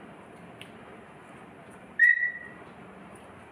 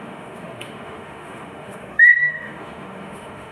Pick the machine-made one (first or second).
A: second